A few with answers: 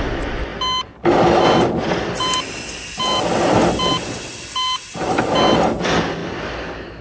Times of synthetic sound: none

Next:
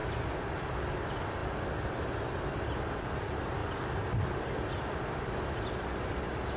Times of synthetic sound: 0.0-0.6 (vocoder, BigVGAN v2); 3.6-5.4